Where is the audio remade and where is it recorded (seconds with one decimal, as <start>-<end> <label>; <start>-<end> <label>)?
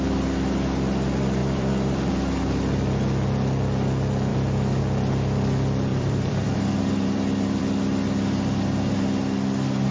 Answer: 0.0-1.4 recorded; 1.4-2.1 remade; 2.1-4.3 recorded; 4.3-4.8 remade; 4.8-5.9 recorded; 5.9-7.6 remade; 7.6-9.9 recorded